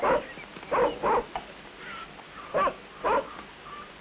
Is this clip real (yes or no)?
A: yes